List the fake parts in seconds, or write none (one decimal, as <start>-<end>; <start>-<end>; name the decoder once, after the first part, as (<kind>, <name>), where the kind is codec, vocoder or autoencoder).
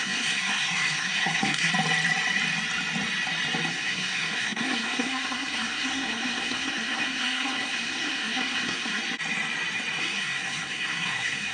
0.0-1.7 (codec, SNAC); 3.7-9.0; 10.0-11.5